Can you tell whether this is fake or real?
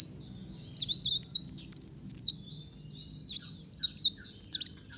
real